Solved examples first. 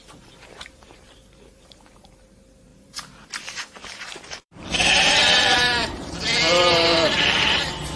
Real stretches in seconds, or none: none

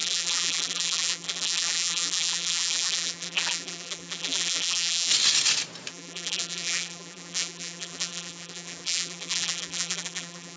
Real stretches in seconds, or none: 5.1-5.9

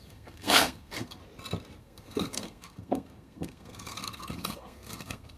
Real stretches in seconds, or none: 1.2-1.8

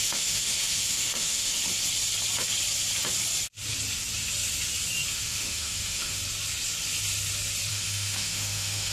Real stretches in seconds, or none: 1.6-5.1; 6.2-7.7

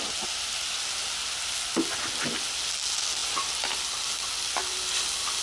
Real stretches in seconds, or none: 0.0-5.4